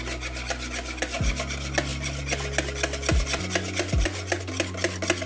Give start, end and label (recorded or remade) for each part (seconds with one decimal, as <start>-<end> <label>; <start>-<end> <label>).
0.0-5.3 recorded